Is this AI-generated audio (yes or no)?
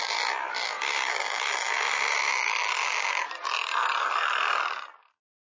no